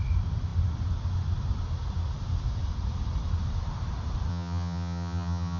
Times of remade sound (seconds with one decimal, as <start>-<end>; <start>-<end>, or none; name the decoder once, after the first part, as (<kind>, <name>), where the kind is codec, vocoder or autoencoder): 4.3-5.6 (vocoder, HiFi-GAN)